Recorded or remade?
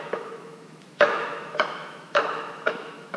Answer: remade